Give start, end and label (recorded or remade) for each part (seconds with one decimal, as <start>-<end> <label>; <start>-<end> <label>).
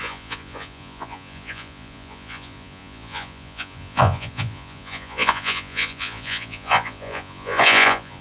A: 0.0-8.2 remade